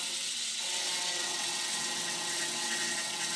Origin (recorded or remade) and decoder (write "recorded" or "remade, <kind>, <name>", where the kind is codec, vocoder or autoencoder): remade, vocoder, WaveNeXt